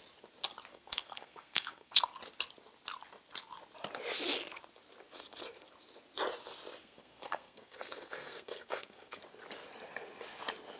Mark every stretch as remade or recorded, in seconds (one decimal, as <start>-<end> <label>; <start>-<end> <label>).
0.0-0.7 recorded; 0.7-2.0 remade; 2.0-6.8 recorded; 6.8-9.2 remade; 9.2-10.8 recorded